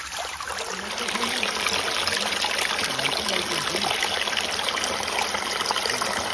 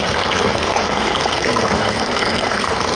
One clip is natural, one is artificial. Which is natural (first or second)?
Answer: first